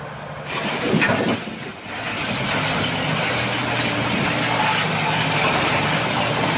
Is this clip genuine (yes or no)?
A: yes